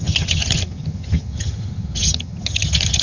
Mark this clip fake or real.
fake